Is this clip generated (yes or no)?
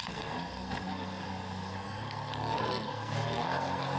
yes